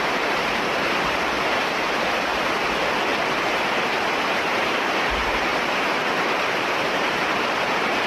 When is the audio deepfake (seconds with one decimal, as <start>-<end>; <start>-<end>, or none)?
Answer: 0.0-2.3; 3.3-8.1